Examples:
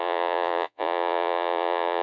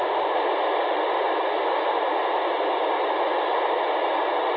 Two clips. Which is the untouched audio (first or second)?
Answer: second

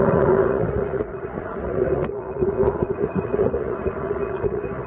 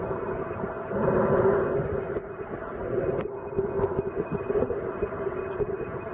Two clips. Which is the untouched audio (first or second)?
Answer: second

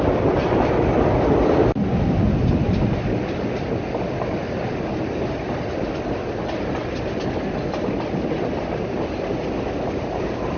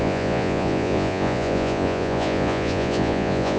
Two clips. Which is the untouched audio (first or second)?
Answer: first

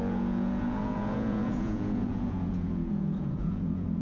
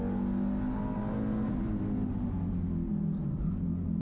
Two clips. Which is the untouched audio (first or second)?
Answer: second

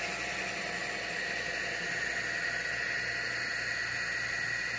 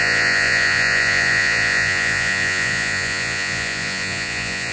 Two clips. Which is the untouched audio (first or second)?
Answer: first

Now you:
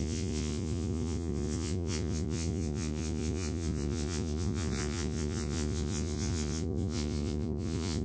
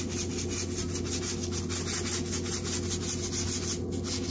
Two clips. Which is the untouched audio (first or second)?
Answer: second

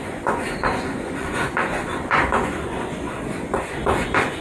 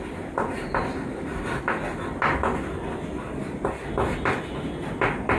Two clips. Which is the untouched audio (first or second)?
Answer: second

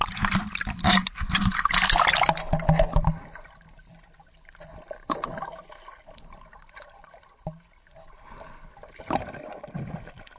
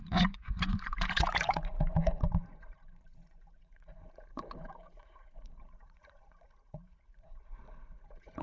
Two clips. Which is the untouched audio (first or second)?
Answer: first